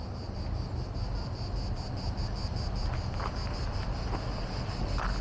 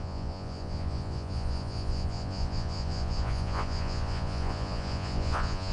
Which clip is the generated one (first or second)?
second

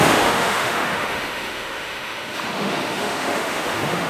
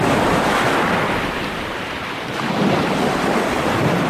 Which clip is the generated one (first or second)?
first